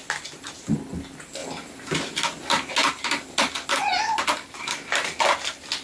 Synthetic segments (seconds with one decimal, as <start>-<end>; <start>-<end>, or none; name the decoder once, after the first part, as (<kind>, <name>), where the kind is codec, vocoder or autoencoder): none